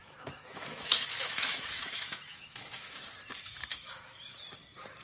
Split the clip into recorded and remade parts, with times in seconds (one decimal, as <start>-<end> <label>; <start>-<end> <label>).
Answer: 0.0-3.0 remade; 3.0-3.7 recorded; 3.7-4.3 remade; 4.3-5.0 recorded